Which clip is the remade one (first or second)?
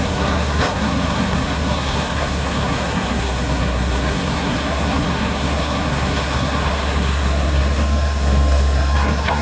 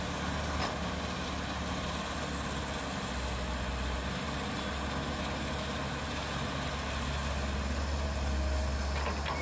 first